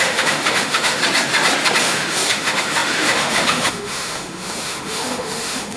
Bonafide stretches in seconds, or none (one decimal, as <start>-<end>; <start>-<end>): 1.0-1.8